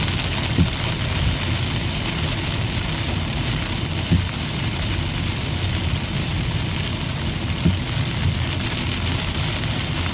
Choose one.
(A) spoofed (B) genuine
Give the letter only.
B